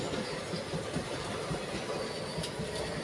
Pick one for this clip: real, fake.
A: real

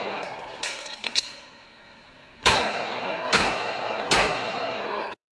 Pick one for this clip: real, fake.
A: fake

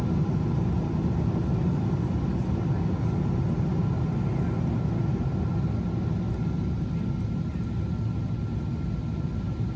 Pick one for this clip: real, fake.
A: real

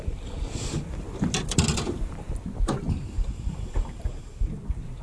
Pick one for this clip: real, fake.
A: real